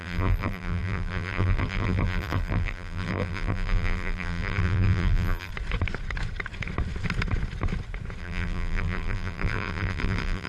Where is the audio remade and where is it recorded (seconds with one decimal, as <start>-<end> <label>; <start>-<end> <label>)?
0.0-5.5 remade; 5.5-8.2 recorded; 8.2-10.5 remade